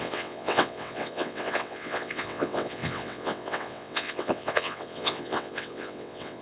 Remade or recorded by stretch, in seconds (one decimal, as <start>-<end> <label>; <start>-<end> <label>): 0.0-6.4 remade